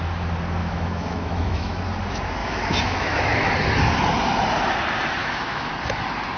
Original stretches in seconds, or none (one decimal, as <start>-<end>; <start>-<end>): 0.0-0.6; 1.8-2.4; 3.5-5.2; 5.7-6.4